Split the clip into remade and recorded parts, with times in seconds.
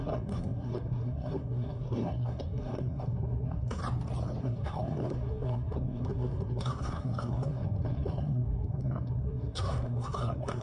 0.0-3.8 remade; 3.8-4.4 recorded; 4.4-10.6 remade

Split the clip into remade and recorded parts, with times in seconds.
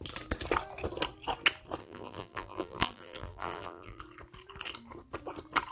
0.0-1.8 recorded; 1.8-4.0 remade; 4.0-5.7 recorded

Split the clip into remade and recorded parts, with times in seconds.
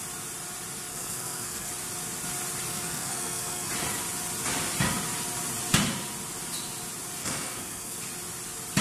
0.0-0.9 recorded; 0.9-1.7 remade; 1.7-2.7 recorded; 2.7-3.7 remade; 3.7-7.2 recorded; 7.2-8.0 remade; 8.0-8.8 recorded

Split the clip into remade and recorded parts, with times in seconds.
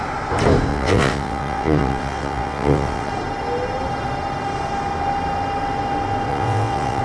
0.0-0.7 recorded; 0.7-3.1 remade; 3.1-6.3 recorded; 6.3-7.0 remade